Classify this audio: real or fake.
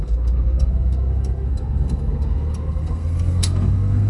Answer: fake